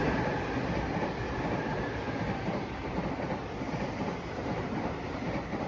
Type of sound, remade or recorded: recorded